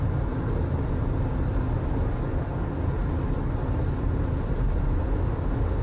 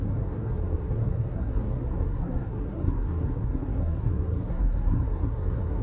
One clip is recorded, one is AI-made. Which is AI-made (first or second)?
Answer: second